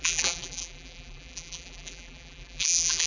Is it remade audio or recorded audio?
remade